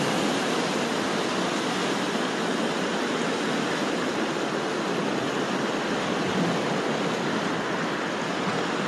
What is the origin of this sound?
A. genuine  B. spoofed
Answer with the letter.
A